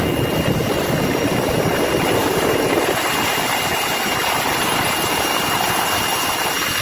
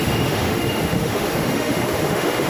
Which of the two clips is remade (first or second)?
second